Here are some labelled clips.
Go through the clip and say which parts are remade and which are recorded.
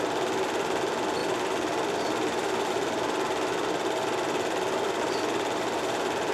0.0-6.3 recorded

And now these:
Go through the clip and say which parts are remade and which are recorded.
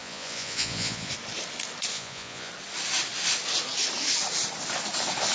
0.0-1.1 remade; 1.1-1.9 recorded; 1.9-2.5 remade; 2.5-5.3 recorded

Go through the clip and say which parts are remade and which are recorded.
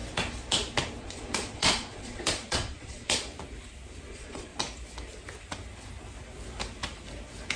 0.0-1.0 recorded; 1.0-3.3 remade; 3.3-4.1 recorded; 4.1-4.5 remade; 4.5-7.6 recorded